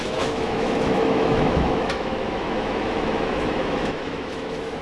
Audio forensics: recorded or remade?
remade